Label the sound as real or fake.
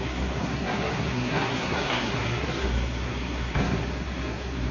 fake